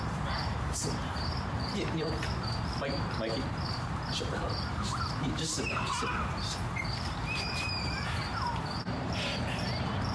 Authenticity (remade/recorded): remade